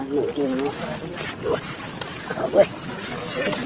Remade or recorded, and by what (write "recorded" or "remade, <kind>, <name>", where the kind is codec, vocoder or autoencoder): recorded